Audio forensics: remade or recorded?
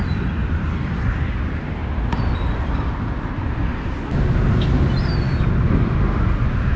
recorded